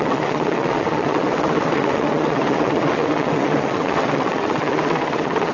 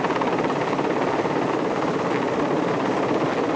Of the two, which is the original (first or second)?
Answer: second